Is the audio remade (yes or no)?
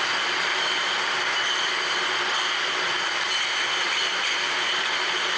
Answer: no